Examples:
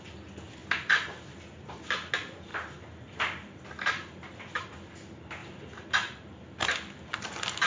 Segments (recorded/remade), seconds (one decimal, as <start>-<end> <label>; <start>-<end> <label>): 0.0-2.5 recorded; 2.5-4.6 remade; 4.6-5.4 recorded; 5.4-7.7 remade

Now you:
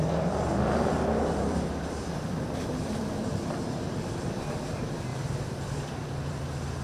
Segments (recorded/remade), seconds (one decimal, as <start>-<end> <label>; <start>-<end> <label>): 0.0-6.8 remade

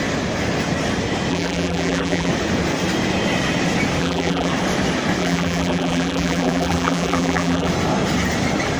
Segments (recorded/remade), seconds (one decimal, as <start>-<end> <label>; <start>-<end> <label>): 0.0-1.3 recorded; 1.3-2.3 remade; 2.3-4.0 recorded; 4.0-4.5 remade; 4.5-5.2 recorded; 5.2-7.7 remade; 7.7-8.8 recorded

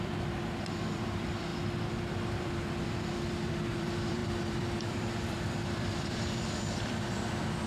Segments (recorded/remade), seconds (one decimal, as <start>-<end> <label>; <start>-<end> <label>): 0.0-1.5 remade; 1.5-2.2 recorded; 2.2-7.7 remade